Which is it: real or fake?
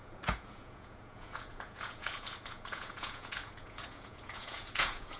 fake